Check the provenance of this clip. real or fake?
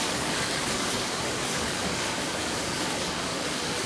fake